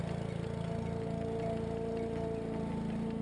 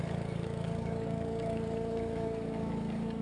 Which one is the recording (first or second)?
first